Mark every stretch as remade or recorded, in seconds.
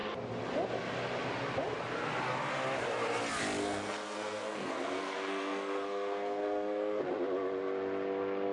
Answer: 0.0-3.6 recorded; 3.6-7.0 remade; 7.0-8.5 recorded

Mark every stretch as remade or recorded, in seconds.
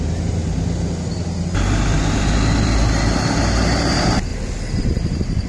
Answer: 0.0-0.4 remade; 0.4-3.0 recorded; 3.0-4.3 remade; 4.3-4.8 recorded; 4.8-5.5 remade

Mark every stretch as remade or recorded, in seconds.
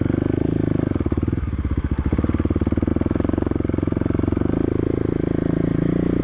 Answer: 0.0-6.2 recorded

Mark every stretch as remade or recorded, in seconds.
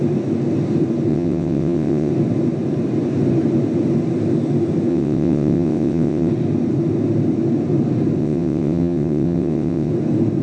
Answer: 0.0-1.1 recorded; 1.1-2.1 remade; 2.1-4.9 recorded; 4.9-6.3 remade; 6.3-8.2 recorded; 8.2-9.9 remade; 9.9-10.4 recorded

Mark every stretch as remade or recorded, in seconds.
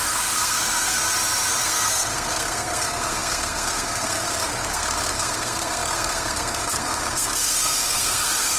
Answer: 0.0-1.0 remade; 1.0-1.6 recorded; 1.6-8.6 remade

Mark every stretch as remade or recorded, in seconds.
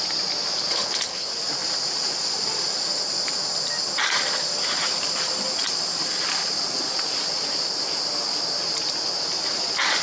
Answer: 0.0-0.7 recorded; 0.7-1.3 remade; 1.3-10.0 recorded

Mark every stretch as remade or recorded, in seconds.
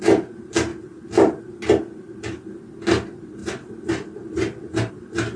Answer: 0.0-5.4 recorded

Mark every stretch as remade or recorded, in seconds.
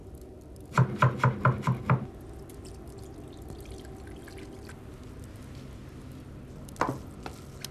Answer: 0.0-7.7 recorded